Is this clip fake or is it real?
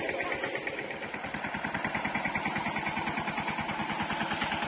real